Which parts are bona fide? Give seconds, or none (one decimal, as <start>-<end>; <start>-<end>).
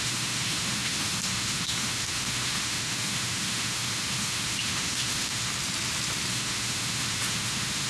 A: 5.5-6.3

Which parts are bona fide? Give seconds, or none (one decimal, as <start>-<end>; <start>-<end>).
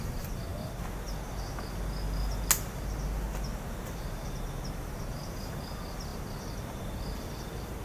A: 0.0-7.8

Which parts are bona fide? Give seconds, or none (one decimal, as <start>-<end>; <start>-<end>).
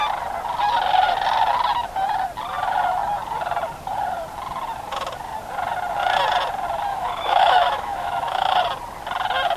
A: 0.0-6.9; 8.6-9.6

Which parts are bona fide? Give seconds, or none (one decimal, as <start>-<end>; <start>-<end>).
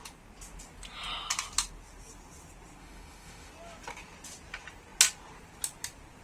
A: 0.0-2.8; 3.5-6.2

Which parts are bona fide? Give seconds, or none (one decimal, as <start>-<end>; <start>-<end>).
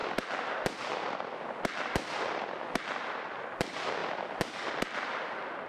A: 0.0-5.7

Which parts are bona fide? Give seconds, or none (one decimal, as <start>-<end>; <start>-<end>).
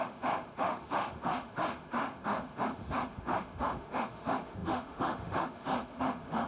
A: none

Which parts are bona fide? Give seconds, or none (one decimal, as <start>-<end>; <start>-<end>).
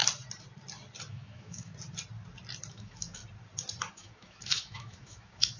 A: 0.0-1.1; 1.7-2.7; 3.2-3.9